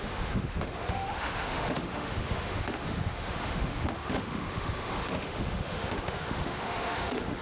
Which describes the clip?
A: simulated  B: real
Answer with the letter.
A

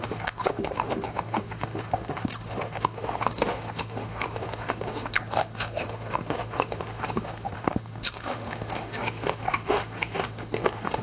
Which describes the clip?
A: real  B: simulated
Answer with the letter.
B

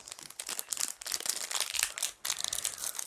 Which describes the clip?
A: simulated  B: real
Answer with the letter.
B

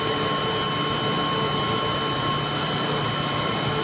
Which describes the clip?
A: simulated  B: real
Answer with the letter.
B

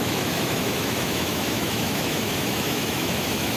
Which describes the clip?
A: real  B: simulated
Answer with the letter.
B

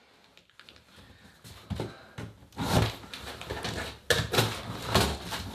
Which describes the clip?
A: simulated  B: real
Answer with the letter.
B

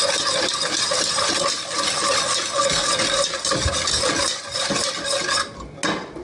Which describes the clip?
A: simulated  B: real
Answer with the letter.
B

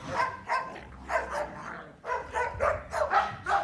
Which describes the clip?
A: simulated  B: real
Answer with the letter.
B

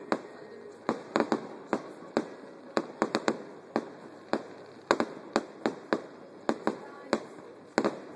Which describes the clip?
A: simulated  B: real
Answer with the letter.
B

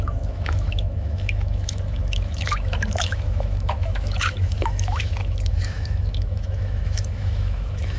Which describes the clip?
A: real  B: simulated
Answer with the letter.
B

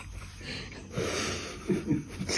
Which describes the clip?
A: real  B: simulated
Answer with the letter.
A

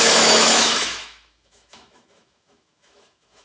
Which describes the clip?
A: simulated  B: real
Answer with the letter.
A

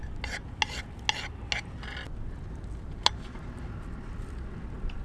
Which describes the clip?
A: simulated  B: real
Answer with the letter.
B